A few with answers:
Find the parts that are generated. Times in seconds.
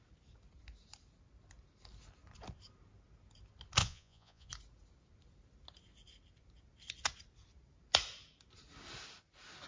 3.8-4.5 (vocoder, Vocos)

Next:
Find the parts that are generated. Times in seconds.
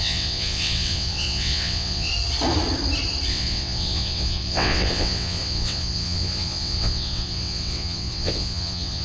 0.0-2.1 (vocoder, WaveNeXt); 3.3-9.0